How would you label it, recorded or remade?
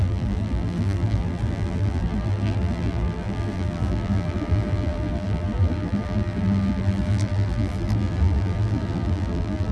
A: remade